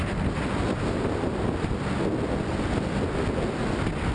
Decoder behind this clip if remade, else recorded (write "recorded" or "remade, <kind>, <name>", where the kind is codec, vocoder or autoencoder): recorded